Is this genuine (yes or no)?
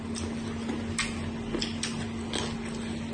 yes